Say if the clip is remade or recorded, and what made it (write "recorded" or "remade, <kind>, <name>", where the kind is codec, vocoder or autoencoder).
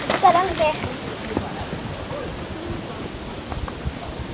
recorded